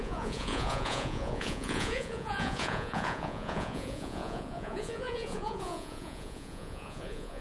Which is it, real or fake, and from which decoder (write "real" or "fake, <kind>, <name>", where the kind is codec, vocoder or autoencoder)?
fake, vocoder, Vocos